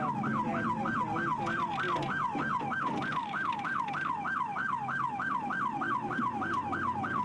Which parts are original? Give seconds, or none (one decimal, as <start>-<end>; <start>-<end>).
0.0-3.2; 3.8-7.2